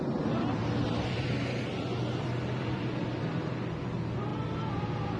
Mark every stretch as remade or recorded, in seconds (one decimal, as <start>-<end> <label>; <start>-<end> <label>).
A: 0.0-0.8 recorded; 0.8-3.9 remade; 3.9-5.2 recorded